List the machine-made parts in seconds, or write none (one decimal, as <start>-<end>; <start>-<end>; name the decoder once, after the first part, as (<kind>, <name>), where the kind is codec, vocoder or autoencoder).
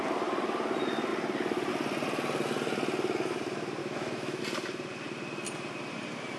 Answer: 3.8-4.4 (autoencoder, DAC-VAE)